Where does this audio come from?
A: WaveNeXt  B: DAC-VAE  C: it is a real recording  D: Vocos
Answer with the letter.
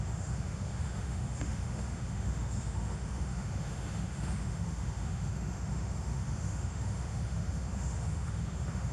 B